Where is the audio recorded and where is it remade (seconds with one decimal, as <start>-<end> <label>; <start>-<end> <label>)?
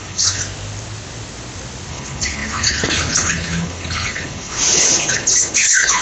0.0-0.4 remade; 0.4-1.9 recorded; 1.9-6.0 remade